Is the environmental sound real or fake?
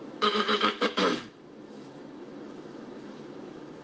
fake